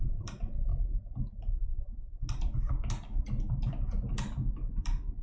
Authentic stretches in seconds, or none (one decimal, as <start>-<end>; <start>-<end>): 0.7-1.3; 2.1-3.2